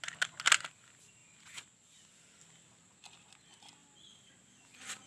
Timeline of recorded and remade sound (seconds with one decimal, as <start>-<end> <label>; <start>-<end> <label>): 0.0-5.1 recorded